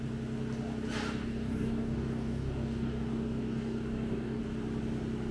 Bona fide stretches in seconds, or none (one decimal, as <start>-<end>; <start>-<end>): 0.0-1.2; 4.4-5.3